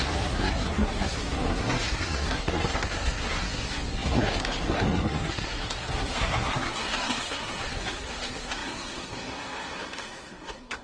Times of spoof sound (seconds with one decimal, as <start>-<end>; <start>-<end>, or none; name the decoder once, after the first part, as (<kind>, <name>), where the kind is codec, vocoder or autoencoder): 0.0-10.8 (codec, SNAC)